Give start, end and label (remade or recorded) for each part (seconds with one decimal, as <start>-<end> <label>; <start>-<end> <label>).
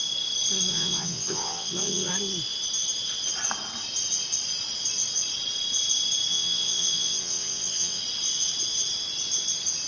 0.0-0.7 recorded; 0.7-2.1 remade; 2.1-6.3 recorded; 6.3-8.0 remade; 8.0-9.9 recorded